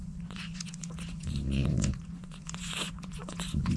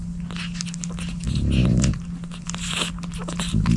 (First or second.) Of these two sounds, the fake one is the first